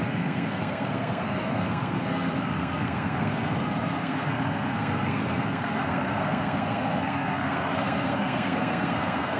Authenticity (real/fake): fake